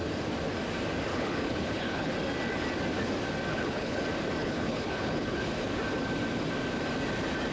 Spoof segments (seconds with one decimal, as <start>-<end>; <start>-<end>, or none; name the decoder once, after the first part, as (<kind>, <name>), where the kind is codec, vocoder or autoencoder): 1.1-2.1 (codec, HILCodec); 3.5-4.0; 4.4-5.5